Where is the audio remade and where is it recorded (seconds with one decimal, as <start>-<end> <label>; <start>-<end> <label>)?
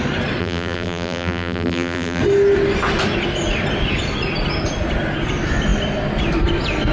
0.0-0.4 recorded; 0.4-2.2 remade; 2.2-6.9 recorded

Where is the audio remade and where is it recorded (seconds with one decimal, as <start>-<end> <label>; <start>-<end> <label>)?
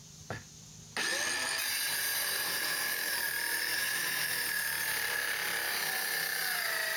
0.0-0.5 remade; 0.5-1.7 recorded; 1.7-2.9 remade; 2.9-3.7 recorded; 3.7-4.4 remade; 4.4-7.0 recorded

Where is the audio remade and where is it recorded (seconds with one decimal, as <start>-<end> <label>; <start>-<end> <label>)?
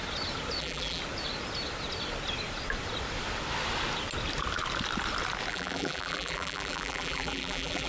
0.0-0.6 recorded; 0.6-1.0 remade; 1.0-5.5 recorded; 5.5-7.9 remade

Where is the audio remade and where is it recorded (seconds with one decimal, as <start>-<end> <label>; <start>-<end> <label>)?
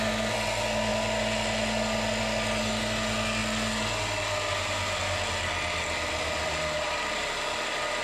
0.0-8.0 recorded